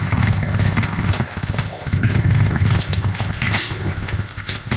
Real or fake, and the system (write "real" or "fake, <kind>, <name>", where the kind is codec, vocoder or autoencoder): fake, codec, ZipCodec